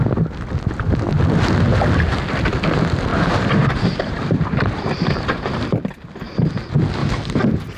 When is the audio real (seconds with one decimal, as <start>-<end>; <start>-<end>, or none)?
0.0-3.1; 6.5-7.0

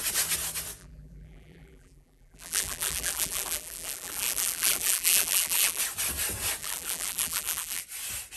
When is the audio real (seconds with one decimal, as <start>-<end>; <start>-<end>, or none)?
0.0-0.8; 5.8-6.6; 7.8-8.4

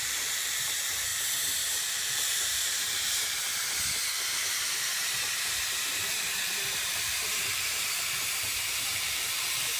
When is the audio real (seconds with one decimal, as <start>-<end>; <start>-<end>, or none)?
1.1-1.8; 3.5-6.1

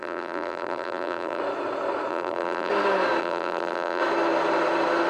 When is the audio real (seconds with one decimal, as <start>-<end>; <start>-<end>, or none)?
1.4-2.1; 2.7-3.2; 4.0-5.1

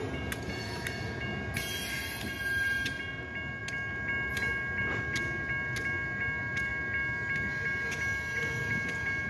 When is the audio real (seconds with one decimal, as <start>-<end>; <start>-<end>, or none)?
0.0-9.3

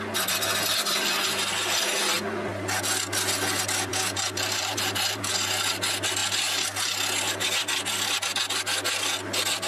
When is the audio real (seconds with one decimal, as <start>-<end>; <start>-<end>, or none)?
0.0-3.9; 5.2-9.7